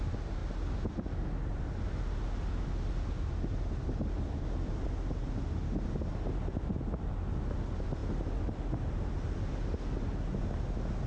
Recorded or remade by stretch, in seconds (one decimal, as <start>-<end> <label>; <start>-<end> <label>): 0.0-11.1 recorded